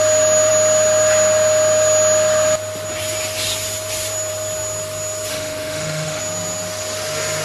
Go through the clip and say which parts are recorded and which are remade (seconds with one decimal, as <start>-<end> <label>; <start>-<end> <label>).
0.0-5.3 recorded; 5.3-6.2 remade; 6.2-7.4 recorded